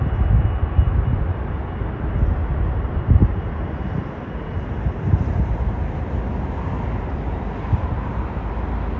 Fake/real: real